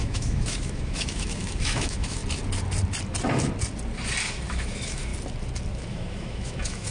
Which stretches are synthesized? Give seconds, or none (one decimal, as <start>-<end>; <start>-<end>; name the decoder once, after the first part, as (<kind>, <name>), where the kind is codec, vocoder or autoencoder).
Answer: 0.0-2.2 (autoencoder, DAC-VAE); 4.5-5.1; 5.8-6.9